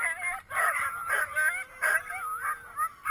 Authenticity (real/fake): real